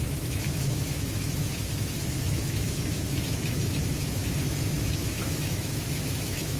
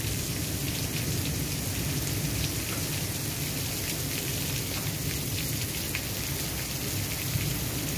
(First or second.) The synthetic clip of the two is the first